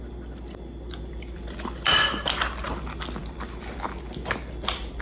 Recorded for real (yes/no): yes